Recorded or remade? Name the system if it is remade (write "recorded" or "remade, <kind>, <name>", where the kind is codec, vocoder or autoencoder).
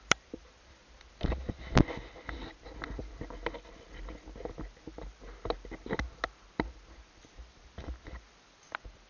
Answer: recorded